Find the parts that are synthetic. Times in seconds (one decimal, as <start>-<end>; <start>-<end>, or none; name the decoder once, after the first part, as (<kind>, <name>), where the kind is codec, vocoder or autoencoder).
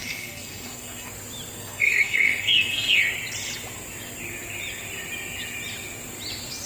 0.0-1.1 (codec, SNAC); 1.6-3.0